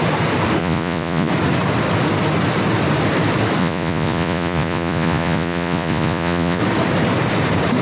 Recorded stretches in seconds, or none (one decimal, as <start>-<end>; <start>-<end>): 0.0-0.6; 1.3-3.6; 6.6-7.8